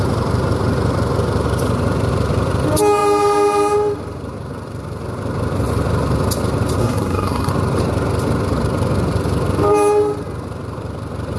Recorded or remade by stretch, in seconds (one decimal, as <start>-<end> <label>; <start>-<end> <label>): 0.0-6.8 recorded; 6.8-7.5 remade; 7.5-11.4 recorded